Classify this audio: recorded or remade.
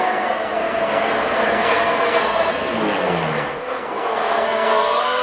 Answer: remade